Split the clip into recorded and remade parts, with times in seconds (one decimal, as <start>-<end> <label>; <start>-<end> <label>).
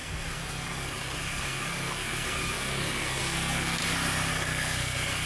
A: 0.0-3.8 remade; 3.8-4.3 recorded; 4.3-5.3 remade